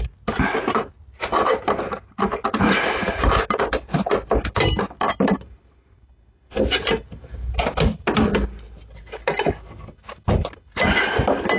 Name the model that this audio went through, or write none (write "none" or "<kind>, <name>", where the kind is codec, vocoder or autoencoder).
none